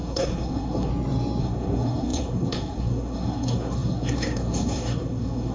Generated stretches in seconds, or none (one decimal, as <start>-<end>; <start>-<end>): 0.0-0.9; 1.4-5.5